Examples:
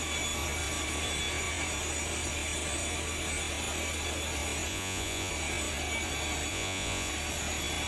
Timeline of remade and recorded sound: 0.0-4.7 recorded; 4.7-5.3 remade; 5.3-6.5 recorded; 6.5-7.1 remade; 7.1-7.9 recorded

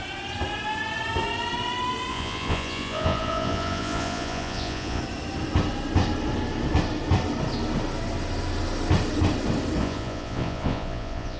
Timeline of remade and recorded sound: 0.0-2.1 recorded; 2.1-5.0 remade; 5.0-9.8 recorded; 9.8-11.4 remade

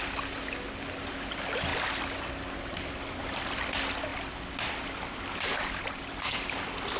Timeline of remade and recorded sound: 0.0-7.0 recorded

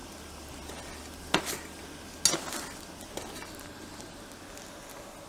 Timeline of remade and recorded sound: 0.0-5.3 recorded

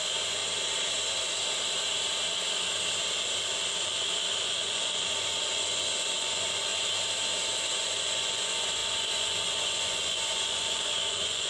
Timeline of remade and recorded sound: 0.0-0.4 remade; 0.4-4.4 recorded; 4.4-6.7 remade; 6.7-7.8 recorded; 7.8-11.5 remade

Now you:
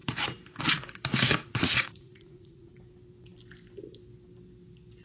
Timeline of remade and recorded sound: 0.0-1.4 recorded; 1.4-2.7 remade; 2.7-5.0 recorded